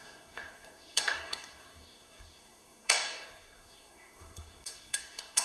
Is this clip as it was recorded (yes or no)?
no